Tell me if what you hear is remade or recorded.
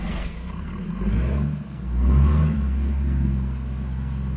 remade